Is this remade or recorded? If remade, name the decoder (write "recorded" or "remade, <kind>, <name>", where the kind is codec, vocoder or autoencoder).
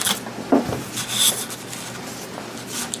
recorded